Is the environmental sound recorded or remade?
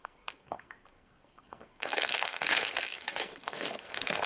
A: remade